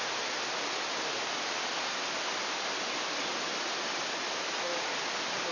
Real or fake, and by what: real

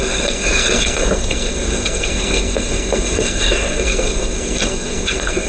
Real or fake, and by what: fake, codec, SNAC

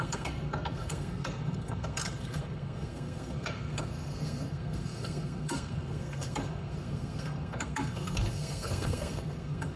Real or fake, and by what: fake, codec, SNAC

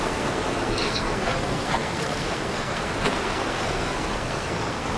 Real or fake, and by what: fake, codec, SNAC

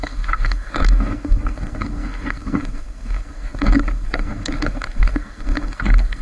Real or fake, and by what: fake, codec, SNAC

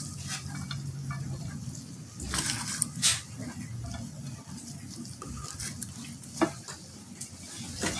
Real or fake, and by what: real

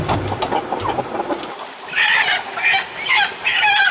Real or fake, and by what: real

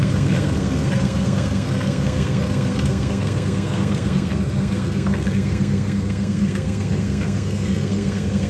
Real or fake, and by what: fake, codec, SNAC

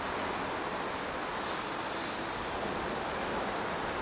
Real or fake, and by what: real